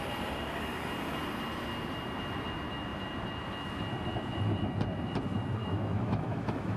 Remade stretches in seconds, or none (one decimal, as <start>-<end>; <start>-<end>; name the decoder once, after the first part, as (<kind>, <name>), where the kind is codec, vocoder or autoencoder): 5.6-6.8 (autoencoder, DAC-VAE)